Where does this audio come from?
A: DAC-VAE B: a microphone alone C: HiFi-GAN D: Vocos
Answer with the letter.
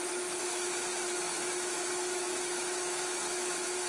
A